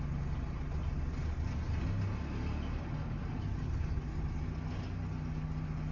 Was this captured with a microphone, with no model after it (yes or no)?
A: yes